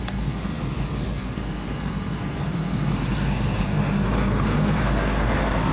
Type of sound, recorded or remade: remade